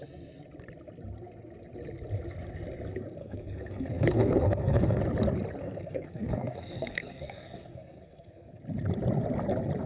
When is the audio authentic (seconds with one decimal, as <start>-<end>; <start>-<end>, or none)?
0.0-3.2; 5.0-5.6; 8.6-9.9